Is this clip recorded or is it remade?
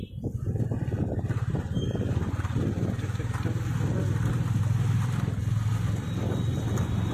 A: recorded